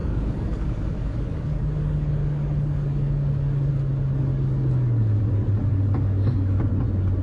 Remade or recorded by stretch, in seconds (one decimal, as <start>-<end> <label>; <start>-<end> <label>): 0.0-3.7 remade; 3.7-4.3 recorded; 4.3-5.2 remade; 5.2-5.7 recorded; 5.7-6.7 remade; 6.7-7.2 recorded